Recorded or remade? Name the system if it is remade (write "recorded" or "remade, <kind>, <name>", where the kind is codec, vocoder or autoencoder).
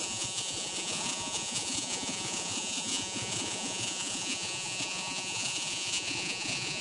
remade, vocoder, Vocos